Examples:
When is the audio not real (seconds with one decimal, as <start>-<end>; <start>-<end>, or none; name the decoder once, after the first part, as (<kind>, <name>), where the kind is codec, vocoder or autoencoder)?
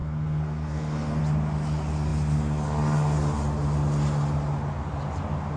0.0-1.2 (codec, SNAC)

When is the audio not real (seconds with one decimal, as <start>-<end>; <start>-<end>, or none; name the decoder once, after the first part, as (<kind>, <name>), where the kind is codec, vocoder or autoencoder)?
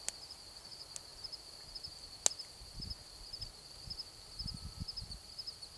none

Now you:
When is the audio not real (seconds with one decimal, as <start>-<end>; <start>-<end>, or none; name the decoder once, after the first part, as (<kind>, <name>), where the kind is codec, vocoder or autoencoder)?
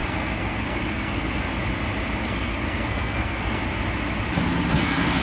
0.0-1.5 (codec, SNAC); 2.2-3.6; 4.7-5.2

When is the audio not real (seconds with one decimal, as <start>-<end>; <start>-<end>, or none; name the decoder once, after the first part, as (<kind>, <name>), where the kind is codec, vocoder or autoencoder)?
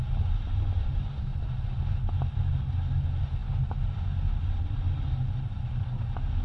none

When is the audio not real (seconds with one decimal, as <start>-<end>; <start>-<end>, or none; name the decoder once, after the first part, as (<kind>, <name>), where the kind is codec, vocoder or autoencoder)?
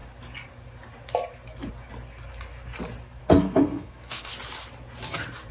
3.2-4.3 (codec, SNAC)